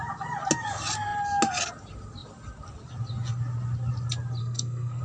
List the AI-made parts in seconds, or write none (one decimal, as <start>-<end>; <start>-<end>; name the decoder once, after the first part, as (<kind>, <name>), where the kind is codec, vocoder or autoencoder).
4.4-5.0 (codec, SNAC)